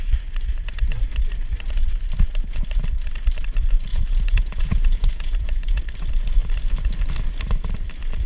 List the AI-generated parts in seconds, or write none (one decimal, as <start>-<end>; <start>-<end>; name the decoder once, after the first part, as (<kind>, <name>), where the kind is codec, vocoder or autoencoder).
3.9-5.8 (vocoder, Vocos)

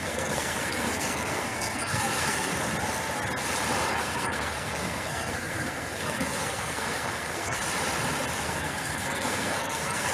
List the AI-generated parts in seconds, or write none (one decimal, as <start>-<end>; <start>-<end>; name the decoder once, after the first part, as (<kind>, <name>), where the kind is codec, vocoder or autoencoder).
0.0-2.5 (codec, SNAC); 3.9-7.6; 8.4-10.1

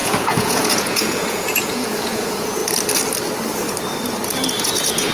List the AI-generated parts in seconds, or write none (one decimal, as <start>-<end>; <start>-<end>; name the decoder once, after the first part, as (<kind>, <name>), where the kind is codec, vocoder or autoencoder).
0.0-2.6 (vocoder, Vocos); 4.6-5.1

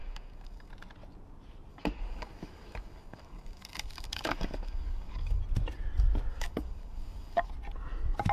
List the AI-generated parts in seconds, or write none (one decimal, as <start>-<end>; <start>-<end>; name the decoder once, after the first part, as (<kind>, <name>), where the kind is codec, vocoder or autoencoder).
0.0-0.7 (codec, DAC); 1.7-5.4; 6.3-7.5

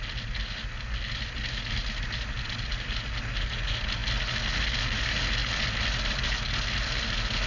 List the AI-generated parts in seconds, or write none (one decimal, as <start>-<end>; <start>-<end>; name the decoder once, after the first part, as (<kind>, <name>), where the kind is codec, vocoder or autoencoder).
none

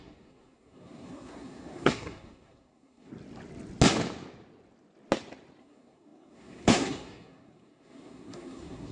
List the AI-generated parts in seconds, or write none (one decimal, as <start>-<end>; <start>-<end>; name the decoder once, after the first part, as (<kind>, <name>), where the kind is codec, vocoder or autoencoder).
0.0-3.1 (codec, SNAC); 5.6-8.9

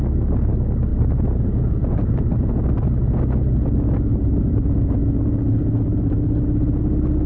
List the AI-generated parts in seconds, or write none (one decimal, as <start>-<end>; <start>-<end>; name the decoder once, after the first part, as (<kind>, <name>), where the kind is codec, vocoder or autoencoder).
0.9-2.6 (vocoder, BigVGAN v2); 4.1-5.0; 5.6-6.8